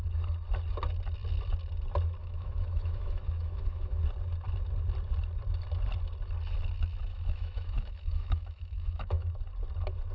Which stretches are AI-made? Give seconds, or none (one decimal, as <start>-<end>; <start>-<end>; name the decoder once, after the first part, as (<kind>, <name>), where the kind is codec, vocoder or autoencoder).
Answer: 2.2-4.0 (autoencoder, DAC-VAE); 7.1-9.3